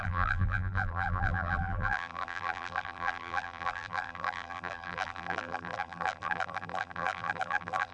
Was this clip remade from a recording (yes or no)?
yes